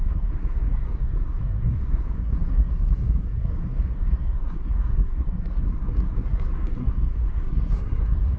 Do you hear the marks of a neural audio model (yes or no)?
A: yes